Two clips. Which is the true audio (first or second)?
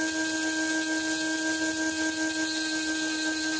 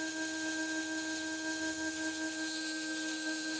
first